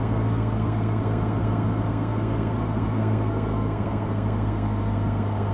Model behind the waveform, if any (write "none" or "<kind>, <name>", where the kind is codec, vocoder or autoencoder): codec, SNAC